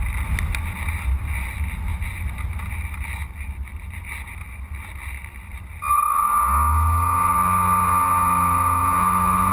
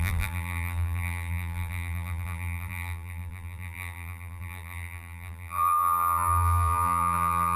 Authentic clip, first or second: first